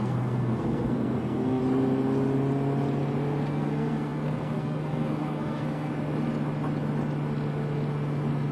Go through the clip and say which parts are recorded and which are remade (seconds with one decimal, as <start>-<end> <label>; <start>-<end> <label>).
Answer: 0.0-1.6 remade; 1.6-3.5 recorded; 3.5-5.9 remade; 5.9-8.5 recorded